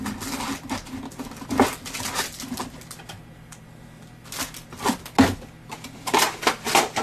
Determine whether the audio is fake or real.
real